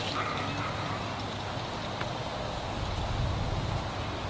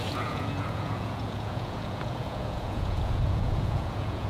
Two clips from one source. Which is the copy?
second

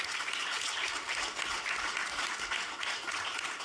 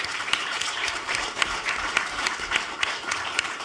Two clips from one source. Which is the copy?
second